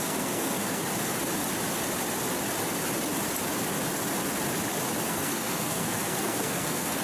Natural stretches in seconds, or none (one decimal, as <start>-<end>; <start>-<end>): 0.8-5.0